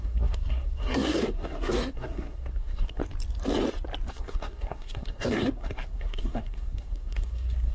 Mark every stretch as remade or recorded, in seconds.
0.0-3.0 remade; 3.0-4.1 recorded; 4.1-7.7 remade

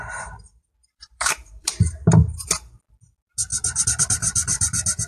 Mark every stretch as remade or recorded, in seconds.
0.0-0.8 recorded; 0.8-1.7 remade; 1.7-5.1 recorded

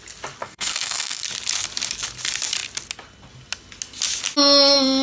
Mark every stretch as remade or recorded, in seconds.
0.0-0.4 recorded; 0.4-1.2 remade; 1.2-5.0 recorded